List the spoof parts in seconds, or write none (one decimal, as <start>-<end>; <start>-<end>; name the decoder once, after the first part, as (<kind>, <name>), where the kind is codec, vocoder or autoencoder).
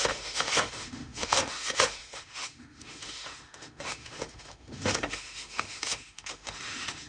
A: 0.0-7.1 (autoencoder, DAC-VAE)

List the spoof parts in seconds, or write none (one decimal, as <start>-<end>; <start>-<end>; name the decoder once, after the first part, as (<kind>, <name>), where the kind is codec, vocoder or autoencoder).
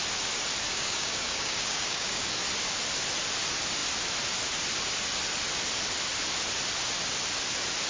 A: 0.7-2.4 (codec, DAC)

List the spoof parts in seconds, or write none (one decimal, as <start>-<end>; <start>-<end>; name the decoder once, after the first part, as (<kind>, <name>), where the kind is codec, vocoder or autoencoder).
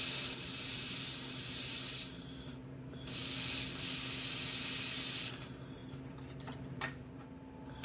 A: 0.0-3.2 (vocoder, BigVGAN v2); 5.3-7.8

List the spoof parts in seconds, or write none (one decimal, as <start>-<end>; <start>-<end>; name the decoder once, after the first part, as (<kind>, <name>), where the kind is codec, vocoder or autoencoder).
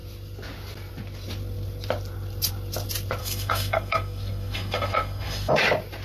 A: 3.2-5.5 (codec, SNAC)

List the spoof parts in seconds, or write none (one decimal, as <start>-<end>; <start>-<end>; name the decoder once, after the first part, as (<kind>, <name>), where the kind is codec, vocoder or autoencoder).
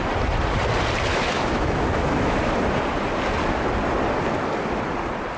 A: 1.1-2.4 (autoencoder, DAC-VAE)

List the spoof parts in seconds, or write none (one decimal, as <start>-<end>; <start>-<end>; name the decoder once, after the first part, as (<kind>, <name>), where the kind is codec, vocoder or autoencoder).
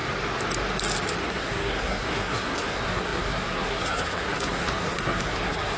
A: 1.2-5.8 (codec, SNAC)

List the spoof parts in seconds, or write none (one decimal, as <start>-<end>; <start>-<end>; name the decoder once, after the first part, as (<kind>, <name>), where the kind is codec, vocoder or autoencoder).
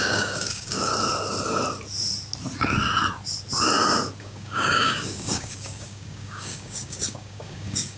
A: 0.0-0.9 (codec, DAC); 4.2-8.0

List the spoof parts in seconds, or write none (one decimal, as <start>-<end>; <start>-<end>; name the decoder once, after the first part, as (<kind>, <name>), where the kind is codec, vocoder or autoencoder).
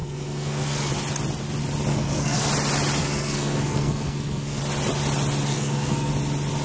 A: 0.0-0.9 (codec, SNAC); 1.9-2.5; 3.0-4.6; 5.5-6.1